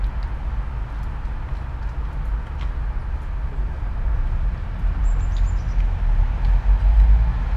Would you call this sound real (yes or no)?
yes